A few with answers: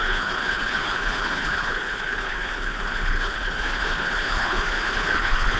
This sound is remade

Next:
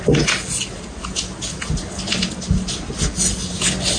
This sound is recorded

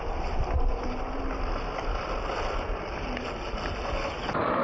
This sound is recorded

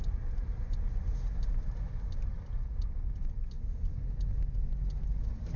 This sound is recorded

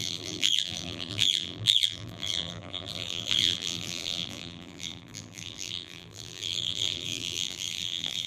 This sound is remade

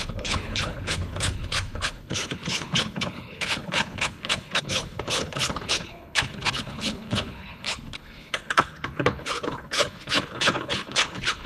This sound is remade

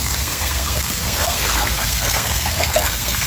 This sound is remade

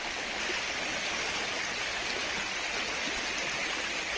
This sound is recorded